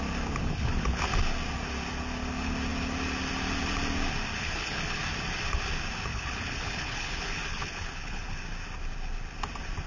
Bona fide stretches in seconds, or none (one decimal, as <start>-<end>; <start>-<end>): 0.0-0.4; 1.0-4.4; 5.0-6.1; 8.4-9.9

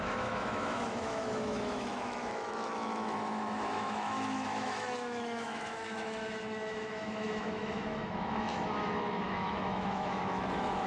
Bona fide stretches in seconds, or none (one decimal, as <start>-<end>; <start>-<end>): none

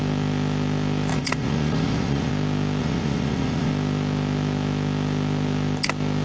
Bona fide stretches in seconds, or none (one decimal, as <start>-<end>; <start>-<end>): 0.0-1.1; 2.3-2.8; 3.7-6.2